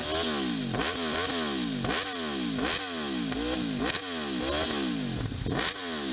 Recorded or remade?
recorded